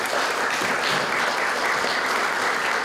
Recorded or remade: recorded